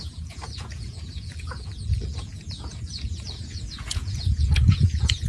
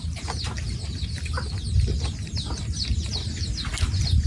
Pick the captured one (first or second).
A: second